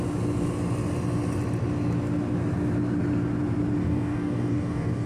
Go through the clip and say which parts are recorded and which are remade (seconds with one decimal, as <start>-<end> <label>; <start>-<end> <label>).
0.0-3.8 recorded; 3.8-5.1 remade